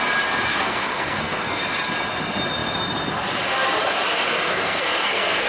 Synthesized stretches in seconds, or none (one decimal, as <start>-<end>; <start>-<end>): 0.5-1.6; 4.3-5.5